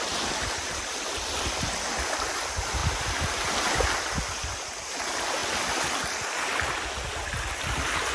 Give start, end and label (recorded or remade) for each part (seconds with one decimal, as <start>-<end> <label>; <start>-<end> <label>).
0.0-8.1 recorded

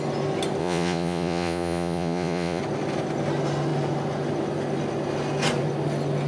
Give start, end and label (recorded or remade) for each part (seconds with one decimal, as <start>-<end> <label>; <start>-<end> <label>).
0.0-0.6 recorded; 0.6-2.6 remade; 2.6-6.3 recorded

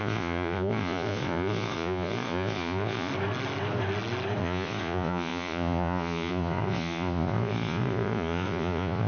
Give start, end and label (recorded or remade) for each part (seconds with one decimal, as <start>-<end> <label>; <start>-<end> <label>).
0.0-3.1 remade; 3.1-4.4 recorded; 4.4-9.1 remade

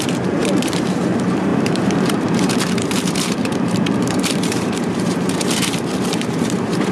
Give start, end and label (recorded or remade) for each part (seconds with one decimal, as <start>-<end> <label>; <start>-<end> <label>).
0.0-6.9 remade

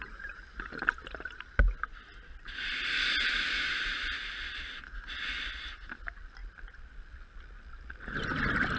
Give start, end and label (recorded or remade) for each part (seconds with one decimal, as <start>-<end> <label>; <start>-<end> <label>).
0.0-8.8 recorded

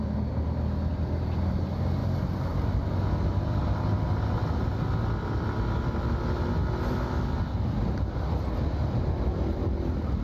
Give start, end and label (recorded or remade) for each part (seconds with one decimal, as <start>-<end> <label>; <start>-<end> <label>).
0.0-0.9 recorded; 0.9-1.6 remade; 1.6-2.0 recorded; 2.0-4.9 remade; 4.9-10.2 recorded

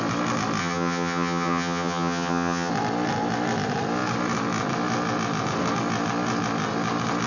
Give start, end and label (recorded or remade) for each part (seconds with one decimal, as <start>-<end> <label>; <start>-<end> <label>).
0.0-0.6 recorded; 0.6-2.7 remade; 2.7-7.3 recorded

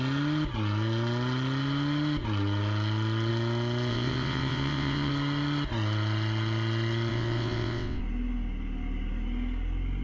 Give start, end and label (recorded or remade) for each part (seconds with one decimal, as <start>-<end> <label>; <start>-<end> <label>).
0.0-3.9 recorded; 3.9-5.1 remade; 5.1-7.1 recorded; 7.1-8.0 remade; 8.0-10.0 recorded